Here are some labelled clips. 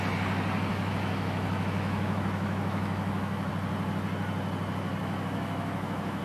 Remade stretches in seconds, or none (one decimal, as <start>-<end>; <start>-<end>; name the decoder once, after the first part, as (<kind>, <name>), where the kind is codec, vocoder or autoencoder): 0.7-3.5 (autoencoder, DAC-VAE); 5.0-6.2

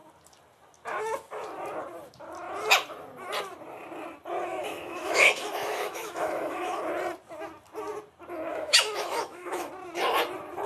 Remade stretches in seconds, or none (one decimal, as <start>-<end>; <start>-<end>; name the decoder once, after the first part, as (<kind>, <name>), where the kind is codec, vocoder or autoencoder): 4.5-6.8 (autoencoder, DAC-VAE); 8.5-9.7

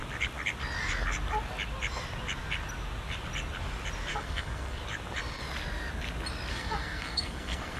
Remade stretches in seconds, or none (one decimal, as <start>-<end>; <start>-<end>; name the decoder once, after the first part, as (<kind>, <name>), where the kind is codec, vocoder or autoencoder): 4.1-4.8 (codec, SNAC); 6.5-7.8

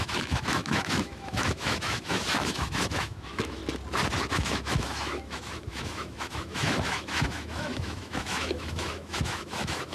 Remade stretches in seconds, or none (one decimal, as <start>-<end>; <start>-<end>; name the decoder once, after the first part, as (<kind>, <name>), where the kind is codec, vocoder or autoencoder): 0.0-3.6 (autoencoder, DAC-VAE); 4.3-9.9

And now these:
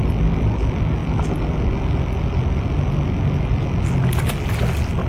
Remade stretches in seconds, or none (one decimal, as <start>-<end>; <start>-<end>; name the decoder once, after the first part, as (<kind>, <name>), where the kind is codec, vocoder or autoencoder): none